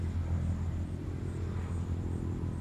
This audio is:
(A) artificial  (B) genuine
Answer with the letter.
B